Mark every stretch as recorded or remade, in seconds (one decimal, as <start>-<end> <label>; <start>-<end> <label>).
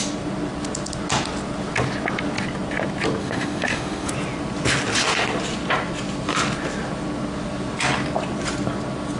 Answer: 0.0-3.2 recorded; 3.2-4.1 remade; 4.1-9.2 recorded